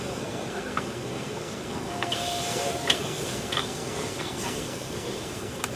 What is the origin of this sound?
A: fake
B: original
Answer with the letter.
A